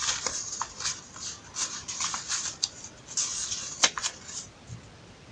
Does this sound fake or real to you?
real